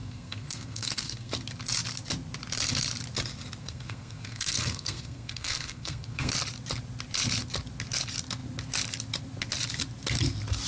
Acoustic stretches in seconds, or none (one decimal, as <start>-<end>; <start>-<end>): 1.3-3.6; 6.3-10.7